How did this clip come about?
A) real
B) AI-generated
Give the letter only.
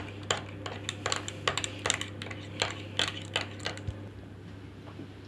A